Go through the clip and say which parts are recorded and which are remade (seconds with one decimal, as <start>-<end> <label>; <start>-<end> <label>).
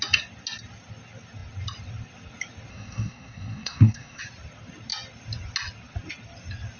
0.0-2.7 recorded; 2.7-4.2 remade; 4.2-6.8 recorded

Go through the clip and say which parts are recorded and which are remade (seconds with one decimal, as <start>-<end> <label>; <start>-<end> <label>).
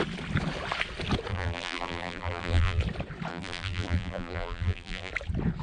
0.0-1.3 recorded; 1.3-2.8 remade; 2.8-3.3 recorded; 3.3-5.1 remade; 5.1-5.6 recorded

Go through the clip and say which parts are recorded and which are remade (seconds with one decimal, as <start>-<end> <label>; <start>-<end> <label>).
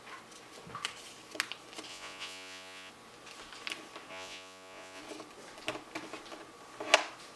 0.0-1.9 recorded; 1.9-2.9 remade; 2.9-4.1 recorded; 4.1-5.0 remade; 5.0-7.4 recorded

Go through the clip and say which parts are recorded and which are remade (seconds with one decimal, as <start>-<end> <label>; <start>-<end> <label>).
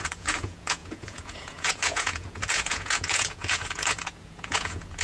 0.0-5.0 remade